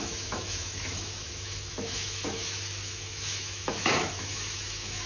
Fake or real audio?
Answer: fake